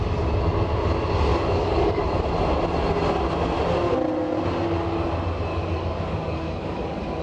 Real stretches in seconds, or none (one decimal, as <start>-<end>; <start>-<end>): 0.0-1.3; 2.0-5.5